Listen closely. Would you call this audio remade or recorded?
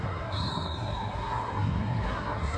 remade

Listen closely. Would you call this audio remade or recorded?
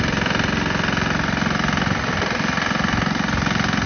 remade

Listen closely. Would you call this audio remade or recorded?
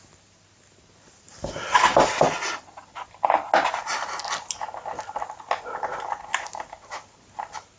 recorded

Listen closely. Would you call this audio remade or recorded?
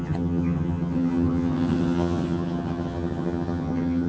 remade